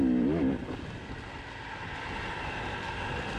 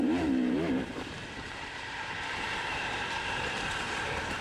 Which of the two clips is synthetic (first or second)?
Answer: second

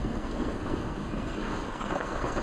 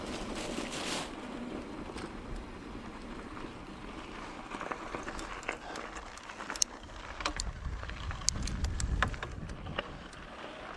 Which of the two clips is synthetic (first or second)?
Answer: first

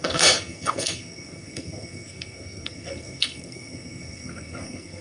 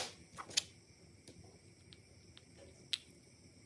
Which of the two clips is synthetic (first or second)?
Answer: first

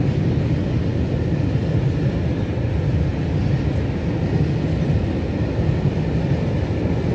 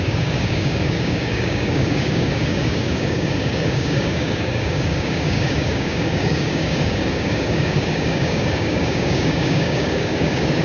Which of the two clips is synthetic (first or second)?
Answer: second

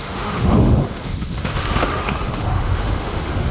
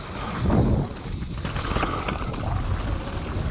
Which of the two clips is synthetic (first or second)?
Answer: first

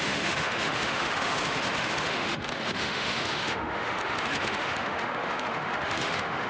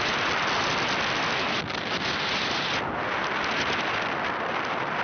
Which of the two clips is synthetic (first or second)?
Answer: first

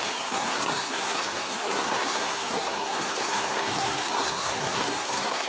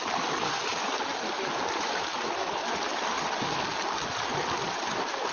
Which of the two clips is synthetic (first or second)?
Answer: first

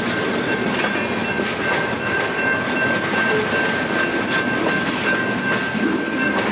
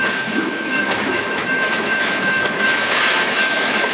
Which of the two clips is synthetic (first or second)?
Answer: second